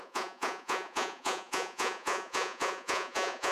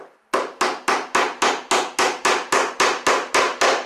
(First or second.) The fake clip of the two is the first